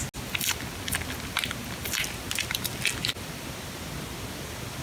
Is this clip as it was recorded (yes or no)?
yes